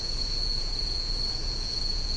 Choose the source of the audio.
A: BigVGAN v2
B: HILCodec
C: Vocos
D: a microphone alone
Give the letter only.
C